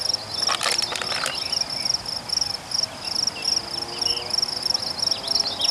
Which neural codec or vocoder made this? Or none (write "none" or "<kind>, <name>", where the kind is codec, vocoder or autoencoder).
none